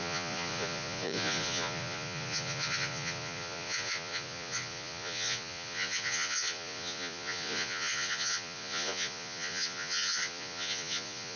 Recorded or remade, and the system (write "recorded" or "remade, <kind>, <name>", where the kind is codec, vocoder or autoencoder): remade, vocoder, Vocos